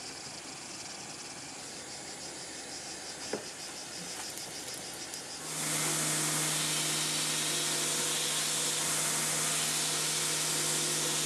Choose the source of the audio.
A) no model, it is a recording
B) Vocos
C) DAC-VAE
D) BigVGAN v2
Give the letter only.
A